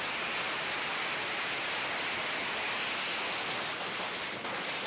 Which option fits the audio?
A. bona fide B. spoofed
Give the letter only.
A